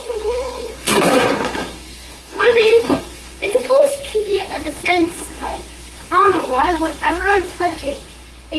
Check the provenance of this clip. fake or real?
fake